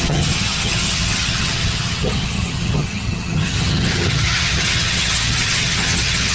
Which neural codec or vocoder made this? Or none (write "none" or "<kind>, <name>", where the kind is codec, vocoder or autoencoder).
vocoder, HiFi-GAN